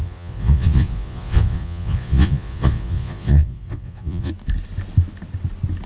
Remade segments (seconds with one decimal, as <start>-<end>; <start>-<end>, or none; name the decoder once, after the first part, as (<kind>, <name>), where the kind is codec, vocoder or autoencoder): 0.0-4.3 (vocoder, Vocos)